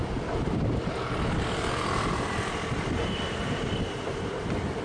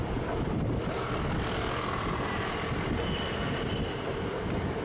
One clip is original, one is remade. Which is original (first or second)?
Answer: second